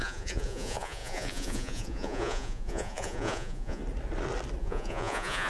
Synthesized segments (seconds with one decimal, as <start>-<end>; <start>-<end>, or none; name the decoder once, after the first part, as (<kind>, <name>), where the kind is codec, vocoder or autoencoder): 0.0-3.8 (vocoder, Vocos); 4.6-5.5